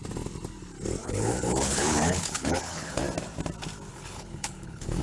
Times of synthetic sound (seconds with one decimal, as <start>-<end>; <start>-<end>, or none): 1.0-3.0; 3.9-5.0